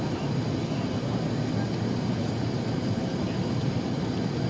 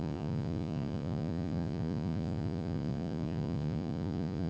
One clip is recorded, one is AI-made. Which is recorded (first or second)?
first